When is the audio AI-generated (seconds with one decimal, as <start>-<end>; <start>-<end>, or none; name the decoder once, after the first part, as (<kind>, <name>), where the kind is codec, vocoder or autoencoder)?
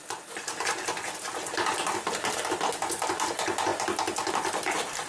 none